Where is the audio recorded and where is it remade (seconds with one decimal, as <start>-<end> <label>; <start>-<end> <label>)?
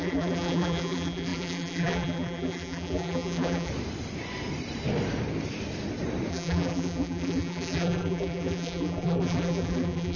0.0-3.7 remade; 3.7-6.3 recorded; 6.3-10.2 remade